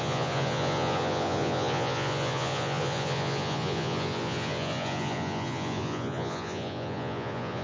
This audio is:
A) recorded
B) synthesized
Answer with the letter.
B